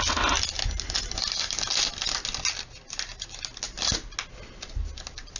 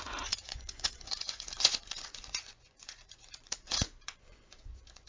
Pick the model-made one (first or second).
second